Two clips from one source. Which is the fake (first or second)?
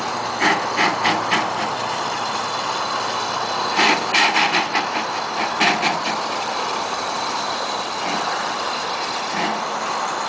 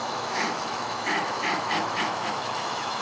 second